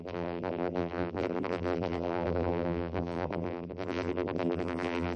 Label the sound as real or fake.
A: fake